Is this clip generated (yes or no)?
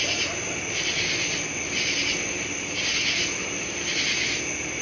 no